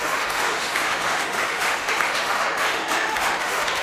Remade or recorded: remade